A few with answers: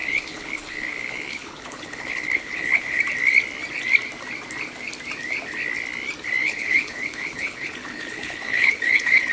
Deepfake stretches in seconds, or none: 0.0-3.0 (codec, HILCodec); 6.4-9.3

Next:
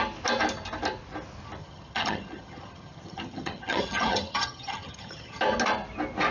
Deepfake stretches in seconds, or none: 1.6-5.4 (vocoder, HiFi-GAN)